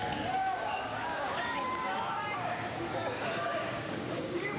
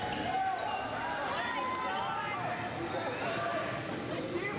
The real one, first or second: second